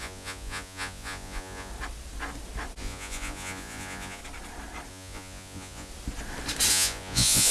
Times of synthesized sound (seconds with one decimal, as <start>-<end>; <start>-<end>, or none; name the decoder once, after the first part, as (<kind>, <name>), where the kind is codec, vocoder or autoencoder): 0.0-1.7 (vocoder, Vocos); 2.8-4.2; 4.9-5.9; 6.7-7.5